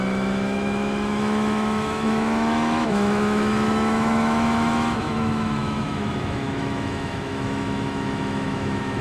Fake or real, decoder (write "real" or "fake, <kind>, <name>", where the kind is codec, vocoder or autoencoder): fake, autoencoder, DAC-VAE